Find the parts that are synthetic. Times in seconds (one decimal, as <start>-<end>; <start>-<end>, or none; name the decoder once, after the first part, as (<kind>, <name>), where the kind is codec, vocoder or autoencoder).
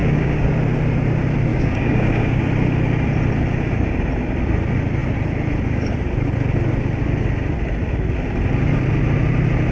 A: 0.0-0.5 (codec, DAC); 1.5-2.4